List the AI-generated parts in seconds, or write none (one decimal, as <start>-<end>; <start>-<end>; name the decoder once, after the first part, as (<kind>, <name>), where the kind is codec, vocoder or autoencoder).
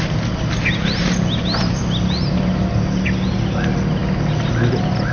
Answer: none